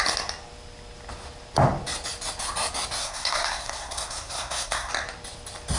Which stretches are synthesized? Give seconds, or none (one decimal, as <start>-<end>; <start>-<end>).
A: 3.0-4.9